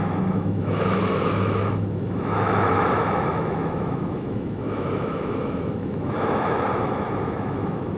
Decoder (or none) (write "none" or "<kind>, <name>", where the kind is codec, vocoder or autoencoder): autoencoder, DAC-VAE